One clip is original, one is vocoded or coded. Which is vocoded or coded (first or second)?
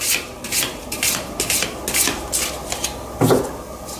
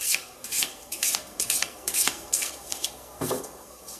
second